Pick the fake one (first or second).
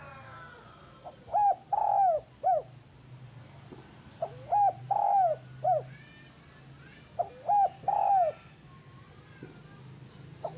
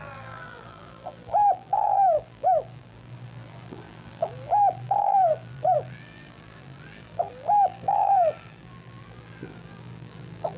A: second